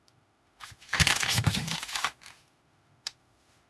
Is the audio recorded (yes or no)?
no